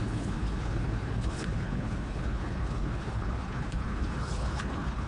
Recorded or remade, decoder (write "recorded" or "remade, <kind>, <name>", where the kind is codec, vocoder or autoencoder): remade, codec, HILCodec